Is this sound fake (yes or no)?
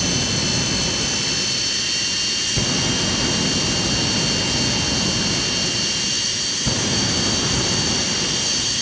no